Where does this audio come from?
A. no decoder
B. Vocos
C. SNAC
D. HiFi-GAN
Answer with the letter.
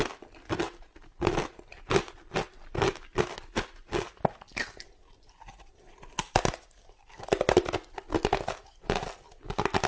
A